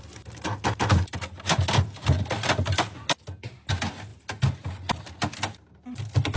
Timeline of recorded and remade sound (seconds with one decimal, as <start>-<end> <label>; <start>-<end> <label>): 0.0-6.4 recorded